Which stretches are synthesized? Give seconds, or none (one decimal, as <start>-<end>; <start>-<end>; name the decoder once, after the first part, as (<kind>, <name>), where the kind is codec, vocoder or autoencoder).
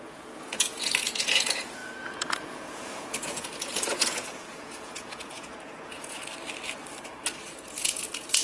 0.0-6.3 (vocoder, Vocos); 7.5-8.4